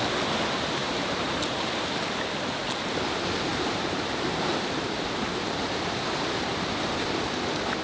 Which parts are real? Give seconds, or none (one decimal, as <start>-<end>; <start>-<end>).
0.0-0.8; 1.7-3.5; 6.9-7.8